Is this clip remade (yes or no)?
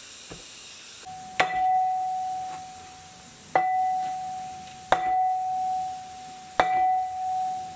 no